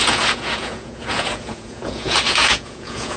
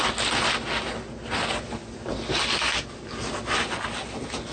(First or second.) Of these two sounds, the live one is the second